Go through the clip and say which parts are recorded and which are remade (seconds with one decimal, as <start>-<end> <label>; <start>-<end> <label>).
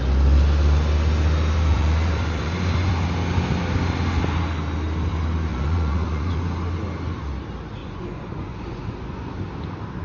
0.0-1.7 recorded; 1.7-2.9 remade; 2.9-5.5 recorded; 5.5-6.4 remade; 6.4-7.8 recorded; 7.8-9.3 remade; 9.3-10.0 recorded